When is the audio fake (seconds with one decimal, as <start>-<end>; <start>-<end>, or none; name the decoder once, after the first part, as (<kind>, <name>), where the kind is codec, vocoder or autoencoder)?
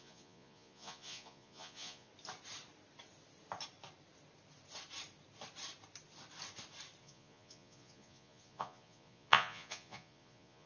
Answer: 0.0-2.1 (vocoder, Vocos); 7.0-10.7